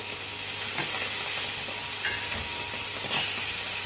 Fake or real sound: real